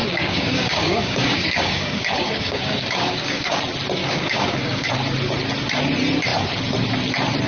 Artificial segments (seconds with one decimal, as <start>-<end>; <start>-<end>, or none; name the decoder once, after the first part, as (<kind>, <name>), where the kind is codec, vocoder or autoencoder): 0.0-3.6 (codec, DAC); 4.0-4.9